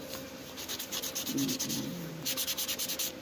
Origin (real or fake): fake